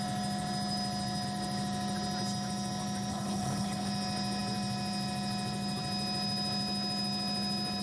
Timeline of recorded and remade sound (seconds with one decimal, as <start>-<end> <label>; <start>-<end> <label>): 0.0-3.1 recorded; 3.1-3.9 remade; 3.9-7.8 recorded